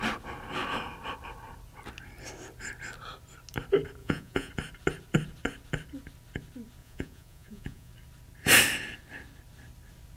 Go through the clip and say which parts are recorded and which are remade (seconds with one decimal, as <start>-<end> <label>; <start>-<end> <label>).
0.0-4.0 recorded; 4.0-4.5 remade; 4.5-6.8 recorded; 6.8-7.9 remade; 7.9-10.2 recorded